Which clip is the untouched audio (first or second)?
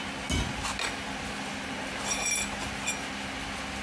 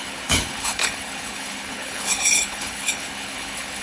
first